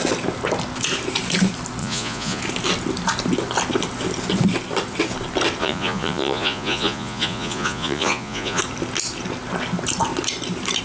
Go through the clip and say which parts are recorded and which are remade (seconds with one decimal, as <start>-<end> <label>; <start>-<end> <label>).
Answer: 0.0-1.8 recorded; 1.8-2.4 remade; 2.4-5.6 recorded; 5.6-8.6 remade; 8.6-10.8 recorded